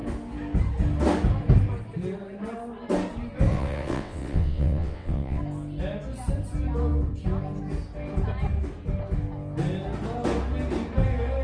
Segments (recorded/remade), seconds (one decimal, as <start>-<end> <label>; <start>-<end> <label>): 0.0-3.5 recorded; 3.5-5.4 remade; 5.4-11.4 recorded